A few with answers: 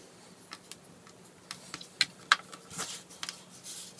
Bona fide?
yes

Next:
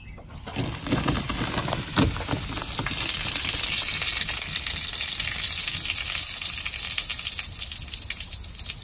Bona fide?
yes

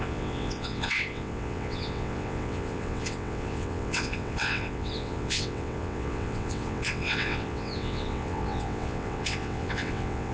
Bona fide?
no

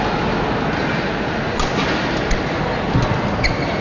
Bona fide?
yes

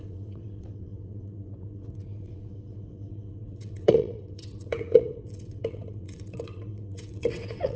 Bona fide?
no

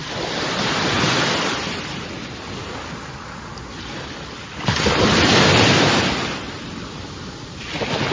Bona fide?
yes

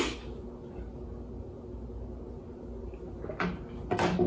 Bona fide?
yes